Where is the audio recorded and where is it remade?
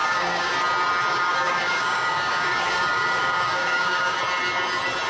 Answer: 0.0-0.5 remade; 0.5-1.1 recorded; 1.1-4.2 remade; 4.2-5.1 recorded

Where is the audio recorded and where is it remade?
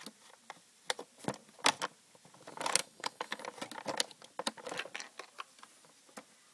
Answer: 0.0-2.8 recorded; 2.8-3.4 remade; 3.4-6.5 recorded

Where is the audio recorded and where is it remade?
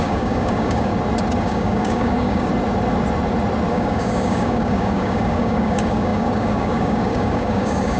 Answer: 0.0-0.9 remade; 0.9-1.4 recorded; 1.4-2.5 remade; 2.5-3.7 recorded; 3.7-8.0 remade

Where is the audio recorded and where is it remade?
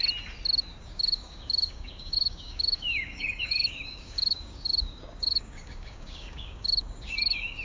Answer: 0.0-0.8 recorded; 0.8-7.6 remade